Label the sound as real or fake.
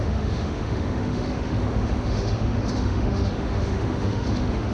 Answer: fake